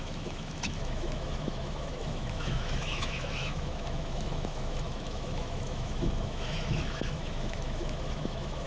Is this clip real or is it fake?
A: fake